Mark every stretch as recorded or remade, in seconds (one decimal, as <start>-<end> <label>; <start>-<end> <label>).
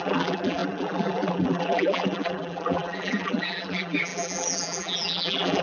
0.0-5.6 remade